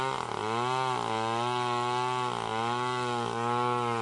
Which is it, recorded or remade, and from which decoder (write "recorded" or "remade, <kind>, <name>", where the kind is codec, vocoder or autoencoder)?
recorded